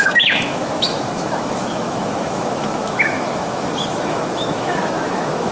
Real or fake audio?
fake